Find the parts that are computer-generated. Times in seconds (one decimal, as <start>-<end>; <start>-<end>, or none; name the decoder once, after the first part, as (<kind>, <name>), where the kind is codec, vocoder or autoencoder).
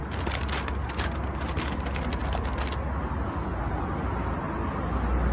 none